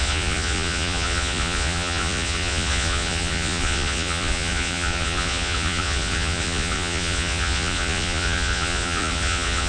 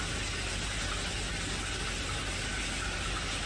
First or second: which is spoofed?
first